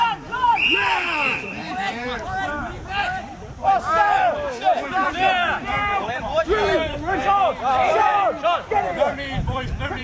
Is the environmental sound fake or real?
fake